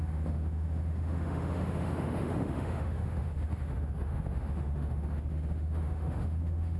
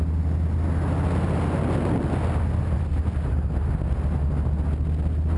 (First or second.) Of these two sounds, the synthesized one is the first